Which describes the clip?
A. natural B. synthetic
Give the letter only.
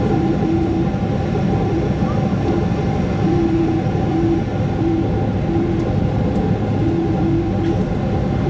A